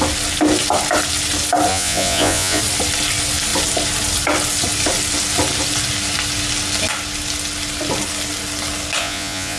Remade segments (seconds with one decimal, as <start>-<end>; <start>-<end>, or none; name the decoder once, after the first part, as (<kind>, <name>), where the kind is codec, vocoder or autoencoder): 1.7-2.6 (vocoder, Vocos); 9.0-9.6